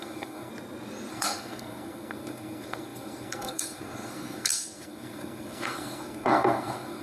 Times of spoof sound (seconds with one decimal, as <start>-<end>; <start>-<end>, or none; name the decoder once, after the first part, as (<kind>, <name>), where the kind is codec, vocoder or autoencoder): 0.0-0.5 (codec, SNAC); 1.1-7.0